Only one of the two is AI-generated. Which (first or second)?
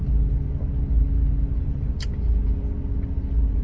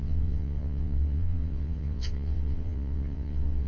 second